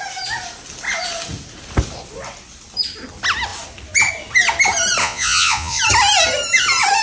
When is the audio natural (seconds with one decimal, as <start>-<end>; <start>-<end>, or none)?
0.0-5.0; 5.8-7.0